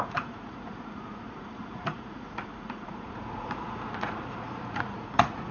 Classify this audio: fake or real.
fake